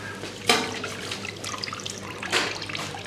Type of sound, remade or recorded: remade